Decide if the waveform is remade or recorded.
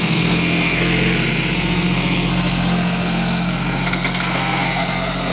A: remade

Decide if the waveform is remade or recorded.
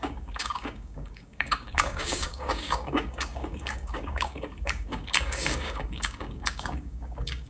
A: remade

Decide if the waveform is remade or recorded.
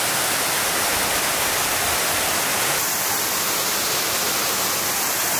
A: recorded